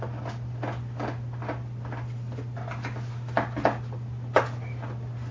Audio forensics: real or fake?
real